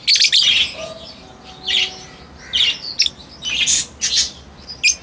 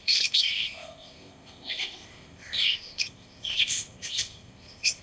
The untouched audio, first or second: first